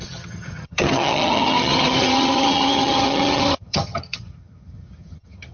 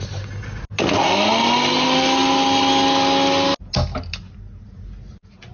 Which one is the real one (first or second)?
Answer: second